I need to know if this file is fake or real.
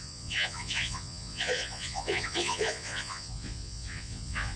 fake